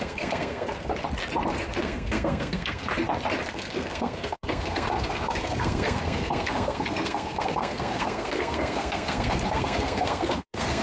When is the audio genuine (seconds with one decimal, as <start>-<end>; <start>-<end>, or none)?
0.9-1.8; 2.9-3.5